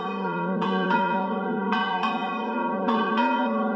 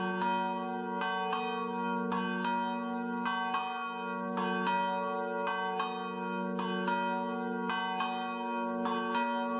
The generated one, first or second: first